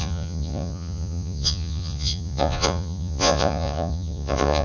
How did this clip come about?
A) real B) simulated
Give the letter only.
B